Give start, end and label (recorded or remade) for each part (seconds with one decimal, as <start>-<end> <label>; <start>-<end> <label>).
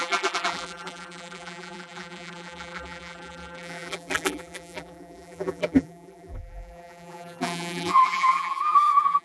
0.0-9.2 remade